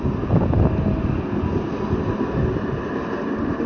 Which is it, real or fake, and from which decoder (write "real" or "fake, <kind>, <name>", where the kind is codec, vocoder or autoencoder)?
real